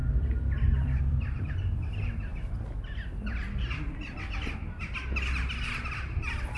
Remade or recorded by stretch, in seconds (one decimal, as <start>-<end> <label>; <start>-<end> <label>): 0.0-2.3 remade; 2.3-6.6 recorded